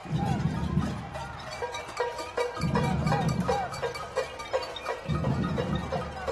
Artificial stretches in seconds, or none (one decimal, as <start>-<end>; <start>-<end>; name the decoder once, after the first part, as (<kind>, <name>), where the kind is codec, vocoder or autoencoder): 0.0-3.8 (vocoder, BigVGAN v2)